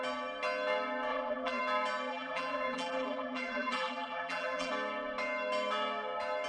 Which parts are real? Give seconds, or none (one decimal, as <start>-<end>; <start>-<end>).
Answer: 0.0-1.1; 1.6-2.1; 4.7-6.5